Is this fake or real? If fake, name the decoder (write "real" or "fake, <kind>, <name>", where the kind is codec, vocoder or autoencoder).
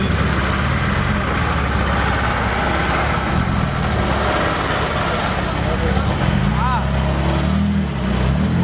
real